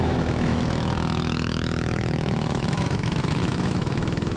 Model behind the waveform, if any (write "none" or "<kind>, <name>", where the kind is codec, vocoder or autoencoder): autoencoder, DAC-VAE